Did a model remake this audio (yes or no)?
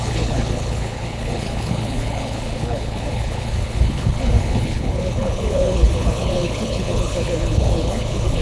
yes